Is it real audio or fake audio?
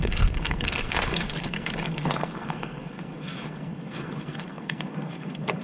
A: fake